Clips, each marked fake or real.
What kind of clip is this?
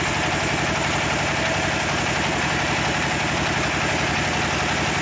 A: real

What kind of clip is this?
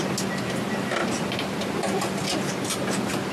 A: real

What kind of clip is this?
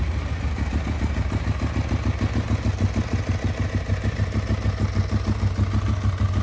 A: real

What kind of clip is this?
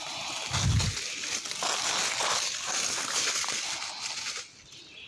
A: real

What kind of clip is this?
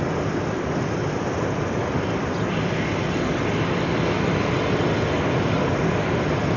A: real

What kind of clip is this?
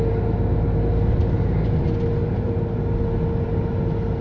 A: real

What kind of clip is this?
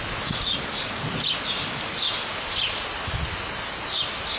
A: real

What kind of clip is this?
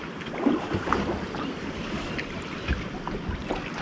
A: real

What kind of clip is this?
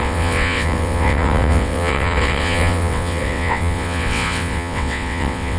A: fake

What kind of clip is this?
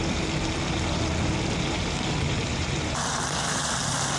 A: fake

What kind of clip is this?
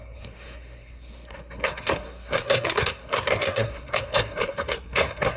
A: fake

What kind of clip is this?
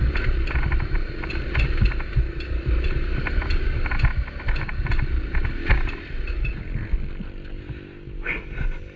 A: real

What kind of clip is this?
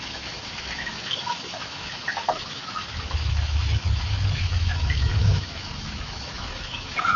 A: fake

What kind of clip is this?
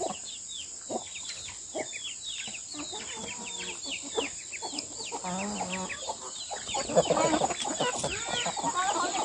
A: real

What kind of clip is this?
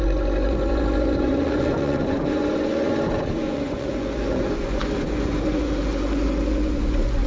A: fake